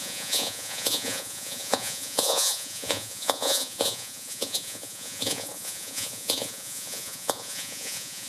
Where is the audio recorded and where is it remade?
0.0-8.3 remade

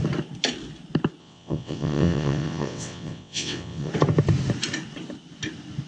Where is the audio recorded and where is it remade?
0.0-1.2 recorded; 1.2-3.9 remade; 3.9-5.9 recorded